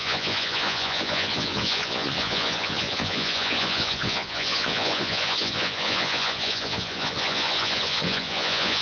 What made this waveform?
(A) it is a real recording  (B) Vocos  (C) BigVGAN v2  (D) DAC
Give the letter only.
B